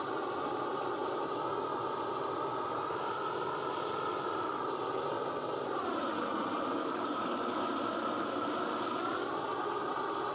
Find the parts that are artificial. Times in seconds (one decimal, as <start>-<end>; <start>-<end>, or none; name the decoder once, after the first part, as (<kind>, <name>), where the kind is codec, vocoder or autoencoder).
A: 6.8-7.7 (codec, DAC)